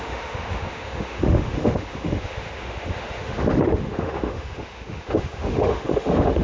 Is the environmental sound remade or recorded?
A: remade